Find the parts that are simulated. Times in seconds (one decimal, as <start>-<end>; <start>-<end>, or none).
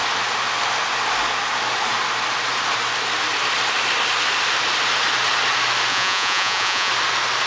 5.9-6.9